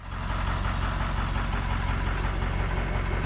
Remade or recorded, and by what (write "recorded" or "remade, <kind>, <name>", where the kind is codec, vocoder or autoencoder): recorded